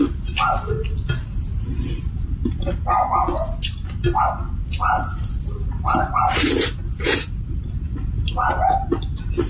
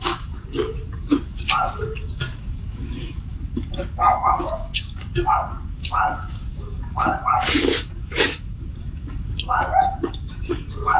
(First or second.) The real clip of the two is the first